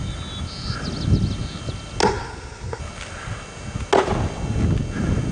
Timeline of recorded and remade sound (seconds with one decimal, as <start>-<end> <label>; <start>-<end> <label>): 0.0-2.0 recorded; 2.0-2.8 remade; 2.8-5.3 recorded